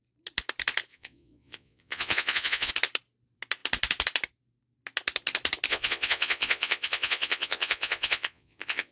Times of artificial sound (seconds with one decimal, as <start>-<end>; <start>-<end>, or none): 0.9-2.7; 5.7-8.9